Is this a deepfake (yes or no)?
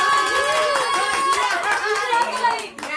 no